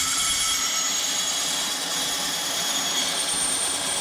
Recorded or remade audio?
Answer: remade